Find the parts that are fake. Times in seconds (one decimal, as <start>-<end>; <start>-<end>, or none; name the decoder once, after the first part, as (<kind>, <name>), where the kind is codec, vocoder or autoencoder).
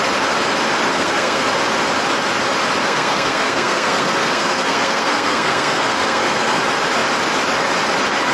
0.9-1.5 (codec, SNAC); 2.8-6.6